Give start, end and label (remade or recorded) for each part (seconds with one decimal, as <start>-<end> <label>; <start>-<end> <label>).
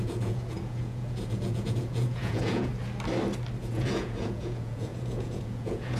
0.0-2.7 remade; 2.7-3.6 recorded; 3.6-6.0 remade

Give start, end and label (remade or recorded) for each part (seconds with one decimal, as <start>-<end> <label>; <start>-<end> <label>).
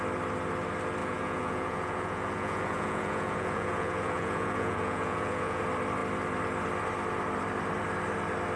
0.0-1.0 recorded; 1.0-5.6 remade; 5.6-8.6 recorded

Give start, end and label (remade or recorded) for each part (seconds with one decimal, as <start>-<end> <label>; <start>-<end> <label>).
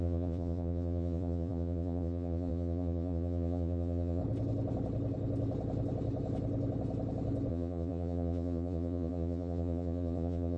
0.0-4.2 remade; 4.2-7.5 recorded; 7.5-10.6 remade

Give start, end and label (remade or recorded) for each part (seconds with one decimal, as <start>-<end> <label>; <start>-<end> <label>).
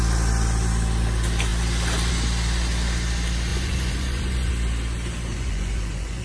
0.0-3.5 recorded; 3.5-4.5 remade; 4.5-5.3 recorded; 5.3-6.2 remade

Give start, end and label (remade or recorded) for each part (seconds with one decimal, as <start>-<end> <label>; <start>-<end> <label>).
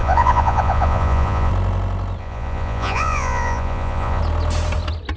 0.0-1.5 remade; 1.5-2.2 recorded; 2.2-4.2 remade; 4.2-5.2 recorded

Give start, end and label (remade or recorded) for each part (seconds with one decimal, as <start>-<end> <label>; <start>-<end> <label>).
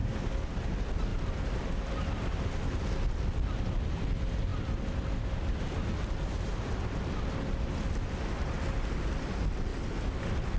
0.0-10.6 recorded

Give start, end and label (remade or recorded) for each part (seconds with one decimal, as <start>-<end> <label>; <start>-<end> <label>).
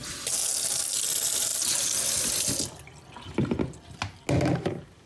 0.0-5.1 recorded